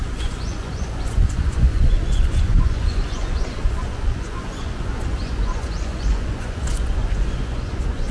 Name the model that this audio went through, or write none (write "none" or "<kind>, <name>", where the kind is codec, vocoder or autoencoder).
vocoder, Vocos